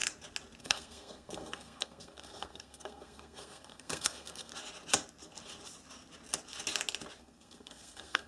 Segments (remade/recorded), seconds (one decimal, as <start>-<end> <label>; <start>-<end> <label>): 0.0-0.6 recorded; 0.6-4.5 remade; 4.5-7.2 recorded; 7.2-8.3 remade